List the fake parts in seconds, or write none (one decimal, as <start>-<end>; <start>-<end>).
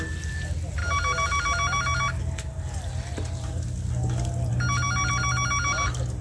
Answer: none